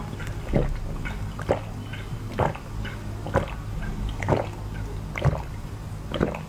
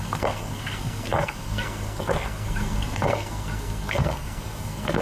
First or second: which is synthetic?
second